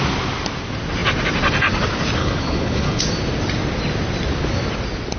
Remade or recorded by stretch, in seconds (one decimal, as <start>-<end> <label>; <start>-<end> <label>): 0.0-2.2 recorded; 2.2-3.0 remade; 3.0-5.2 recorded